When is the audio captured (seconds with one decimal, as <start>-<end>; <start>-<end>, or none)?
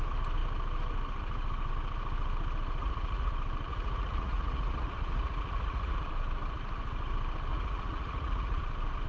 0.0-2.8; 3.3-3.7; 6.1-7.5; 8.6-9.1